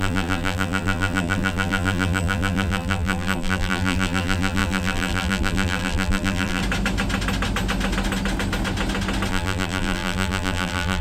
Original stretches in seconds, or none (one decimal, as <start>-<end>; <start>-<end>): 6.6-9.3

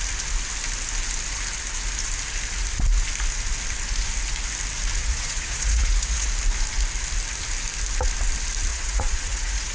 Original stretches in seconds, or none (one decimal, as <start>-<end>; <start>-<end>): 0.0-5.0; 6.3-8.7

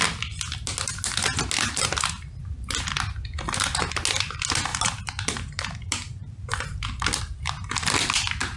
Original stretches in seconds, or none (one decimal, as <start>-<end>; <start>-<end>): 0.0-4.7; 7.2-8.6